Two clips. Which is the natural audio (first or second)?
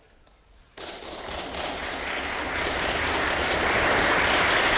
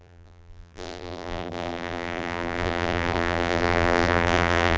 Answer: first